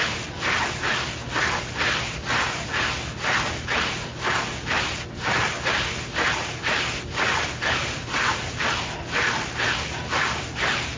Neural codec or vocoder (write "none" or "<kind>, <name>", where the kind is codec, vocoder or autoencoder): none